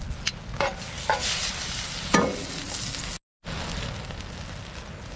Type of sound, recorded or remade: recorded